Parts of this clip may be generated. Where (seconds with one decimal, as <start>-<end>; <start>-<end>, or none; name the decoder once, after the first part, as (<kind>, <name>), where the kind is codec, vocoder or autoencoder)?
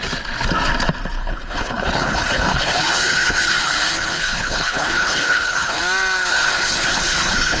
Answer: 1.2-5.8 (codec, HILCodec); 6.3-7.6